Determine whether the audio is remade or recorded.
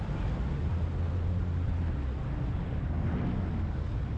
recorded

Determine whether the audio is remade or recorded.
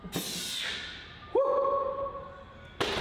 recorded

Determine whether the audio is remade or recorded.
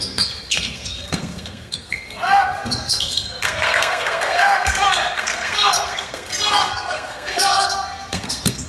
remade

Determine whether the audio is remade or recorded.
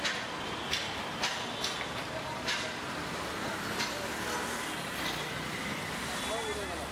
recorded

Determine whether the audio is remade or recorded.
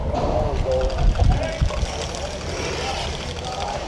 recorded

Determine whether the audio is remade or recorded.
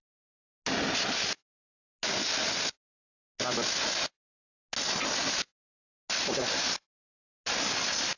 recorded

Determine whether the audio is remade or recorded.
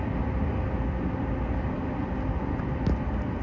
recorded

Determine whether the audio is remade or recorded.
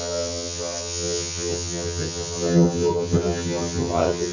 remade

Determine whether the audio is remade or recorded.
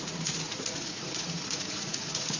remade